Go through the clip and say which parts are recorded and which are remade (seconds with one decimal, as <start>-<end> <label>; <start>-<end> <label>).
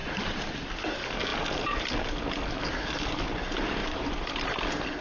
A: 0.0-0.7 remade; 0.7-3.8 recorded; 3.8-4.4 remade; 4.4-5.0 recorded